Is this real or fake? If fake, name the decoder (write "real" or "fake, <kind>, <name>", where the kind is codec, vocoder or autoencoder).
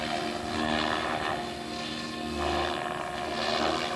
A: real